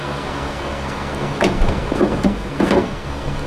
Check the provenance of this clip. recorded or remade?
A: remade